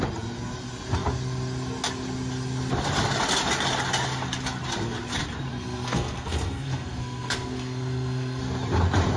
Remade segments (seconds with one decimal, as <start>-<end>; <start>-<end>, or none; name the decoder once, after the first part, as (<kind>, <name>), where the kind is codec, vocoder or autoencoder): 5.5-8.4 (codec, SNAC)